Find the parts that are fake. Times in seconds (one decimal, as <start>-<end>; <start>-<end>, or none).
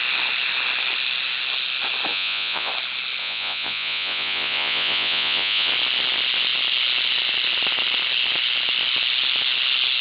2.1-2.7; 3.2-5.7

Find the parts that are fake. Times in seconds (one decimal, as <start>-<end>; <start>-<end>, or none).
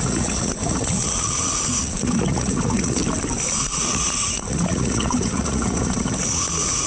0.0-3.0; 3.6-6.9